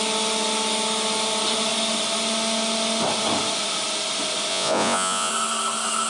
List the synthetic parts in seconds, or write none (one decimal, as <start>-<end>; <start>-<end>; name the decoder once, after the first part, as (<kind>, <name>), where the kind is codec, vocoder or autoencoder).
4.5-5.3 (vocoder, Vocos)